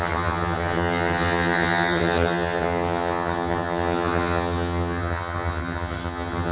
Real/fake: fake